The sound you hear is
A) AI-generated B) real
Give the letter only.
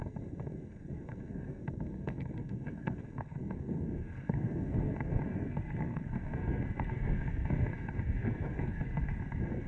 A